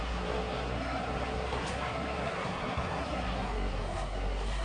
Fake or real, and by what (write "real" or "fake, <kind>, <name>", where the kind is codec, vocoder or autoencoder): fake, codec, SNAC